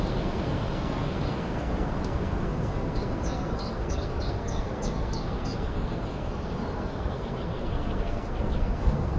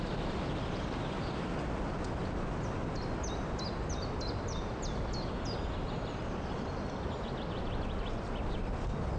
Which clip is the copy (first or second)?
first